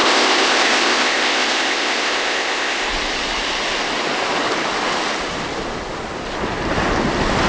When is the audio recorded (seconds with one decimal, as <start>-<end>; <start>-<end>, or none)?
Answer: 2.9-7.5